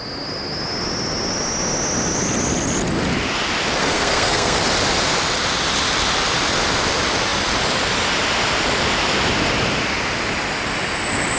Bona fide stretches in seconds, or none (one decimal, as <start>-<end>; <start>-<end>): 0.0-3.8; 4.6-11.4